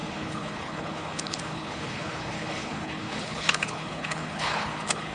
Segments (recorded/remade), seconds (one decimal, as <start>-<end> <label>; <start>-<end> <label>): 0.0-5.1 remade